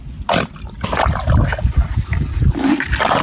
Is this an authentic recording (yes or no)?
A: yes